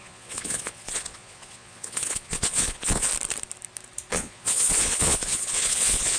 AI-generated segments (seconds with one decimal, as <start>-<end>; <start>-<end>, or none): 0.0-3.1; 4.1-6.2